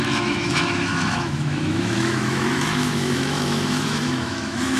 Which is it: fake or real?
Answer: fake